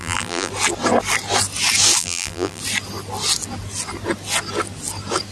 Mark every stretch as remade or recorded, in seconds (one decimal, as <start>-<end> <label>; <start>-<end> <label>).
0.0-0.5 remade; 0.5-2.0 recorded; 2.0-2.6 remade; 2.6-5.3 recorded